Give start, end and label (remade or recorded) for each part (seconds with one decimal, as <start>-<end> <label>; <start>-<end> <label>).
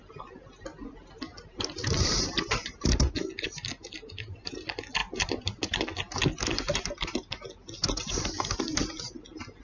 0.0-1.3 recorded; 1.3-3.0 remade; 3.0-3.8 recorded; 3.8-4.5 remade; 4.5-5.0 recorded; 5.0-5.8 remade; 5.8-9.6 recorded